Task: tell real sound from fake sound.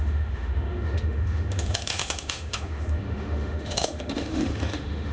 fake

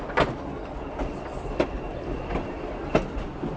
real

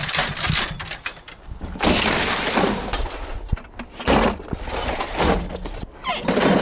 real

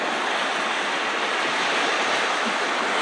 real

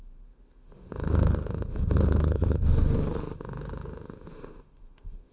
fake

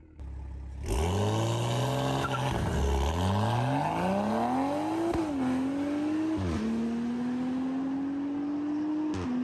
real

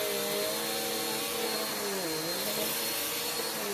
real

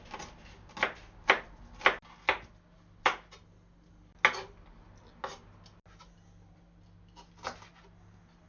real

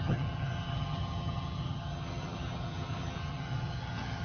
fake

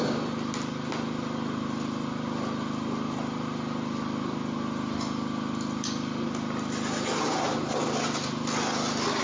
real